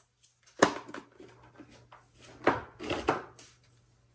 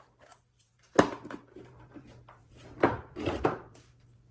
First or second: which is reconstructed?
second